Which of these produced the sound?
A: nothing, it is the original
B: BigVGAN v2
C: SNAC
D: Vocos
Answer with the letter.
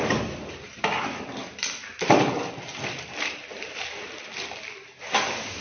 B